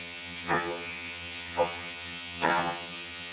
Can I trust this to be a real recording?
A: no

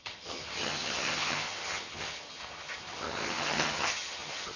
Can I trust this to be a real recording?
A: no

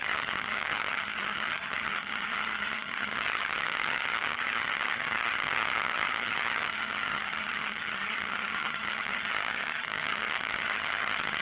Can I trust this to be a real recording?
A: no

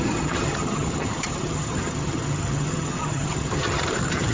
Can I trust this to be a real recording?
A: no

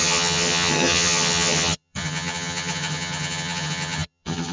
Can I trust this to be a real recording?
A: no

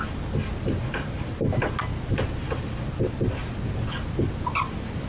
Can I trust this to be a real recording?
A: yes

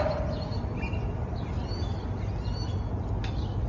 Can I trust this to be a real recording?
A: yes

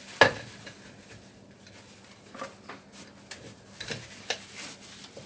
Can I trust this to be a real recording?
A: yes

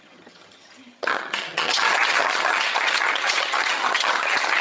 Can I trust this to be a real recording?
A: no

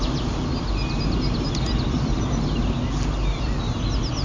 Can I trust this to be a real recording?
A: yes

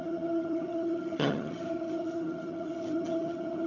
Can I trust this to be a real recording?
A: no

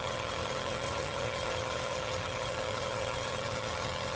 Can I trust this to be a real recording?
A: no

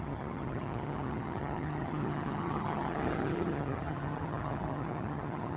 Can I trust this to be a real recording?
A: no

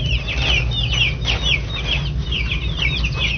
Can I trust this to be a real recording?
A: yes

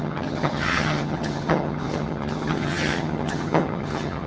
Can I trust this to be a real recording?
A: no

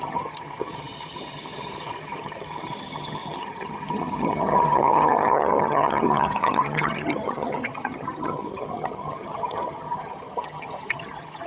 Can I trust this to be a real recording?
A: no